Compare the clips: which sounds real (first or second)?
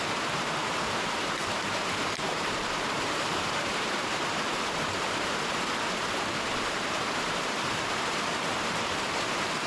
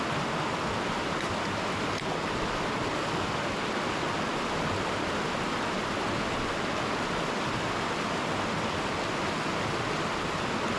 second